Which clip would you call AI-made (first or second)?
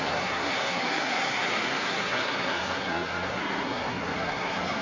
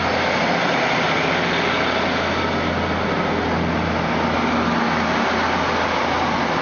first